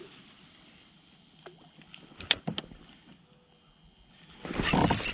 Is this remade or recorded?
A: remade